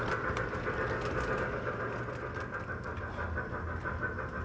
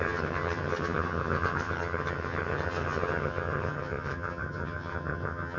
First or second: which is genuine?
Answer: first